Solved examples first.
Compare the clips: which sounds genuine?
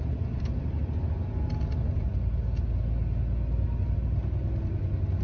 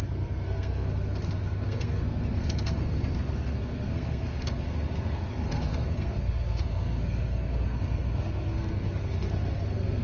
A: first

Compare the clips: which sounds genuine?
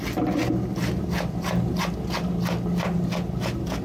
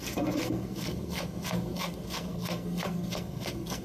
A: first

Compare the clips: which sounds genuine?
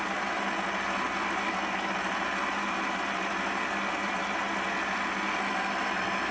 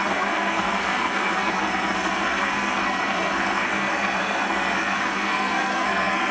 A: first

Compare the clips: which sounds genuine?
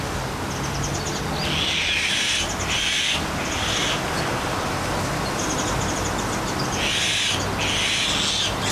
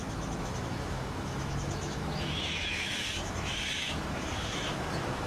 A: first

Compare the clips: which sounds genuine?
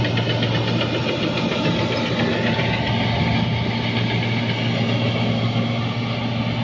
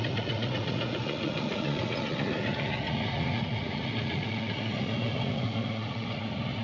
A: first